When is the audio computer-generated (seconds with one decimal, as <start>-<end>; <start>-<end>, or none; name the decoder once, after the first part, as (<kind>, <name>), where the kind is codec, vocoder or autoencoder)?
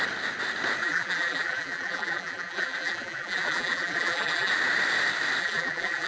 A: 0.8-4.5 (vocoder, BigVGAN v2); 5.4-6.1